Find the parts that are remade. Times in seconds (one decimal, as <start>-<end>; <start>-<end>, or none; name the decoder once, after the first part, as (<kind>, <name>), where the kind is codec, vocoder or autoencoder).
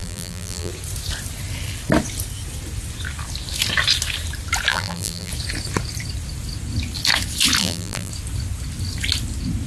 0.0-0.7 (vocoder, BigVGAN v2); 4.7-5.3; 7.6-8.1